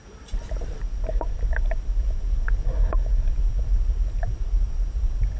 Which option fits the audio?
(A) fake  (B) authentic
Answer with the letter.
A